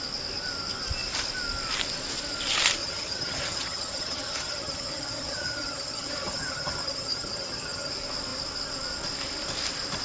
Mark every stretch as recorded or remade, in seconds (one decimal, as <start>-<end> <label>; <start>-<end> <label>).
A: 0.0-2.8 recorded; 2.8-7.9 remade; 7.9-10.0 recorded